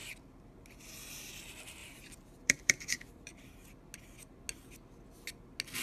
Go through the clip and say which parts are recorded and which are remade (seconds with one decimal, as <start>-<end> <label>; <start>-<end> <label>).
0.0-1.8 recorded; 1.8-3.4 remade; 3.4-5.8 recorded